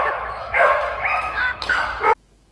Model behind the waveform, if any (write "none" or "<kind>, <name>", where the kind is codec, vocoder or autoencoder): autoencoder, DAC-VAE